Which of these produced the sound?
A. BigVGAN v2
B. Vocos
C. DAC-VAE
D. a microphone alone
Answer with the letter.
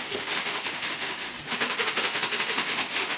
C